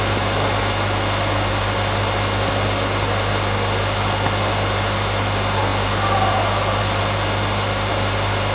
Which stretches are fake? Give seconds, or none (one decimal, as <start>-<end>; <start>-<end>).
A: none